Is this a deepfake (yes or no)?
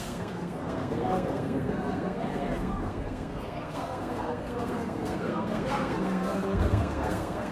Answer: yes